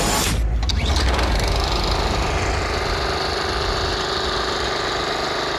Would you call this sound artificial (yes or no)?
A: no